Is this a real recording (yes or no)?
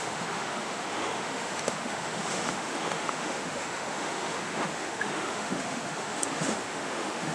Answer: no